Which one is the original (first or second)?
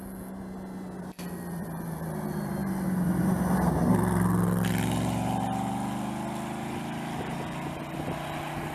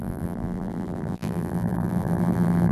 first